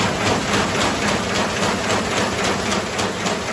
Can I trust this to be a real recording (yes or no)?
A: yes